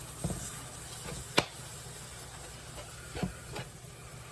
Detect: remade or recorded recorded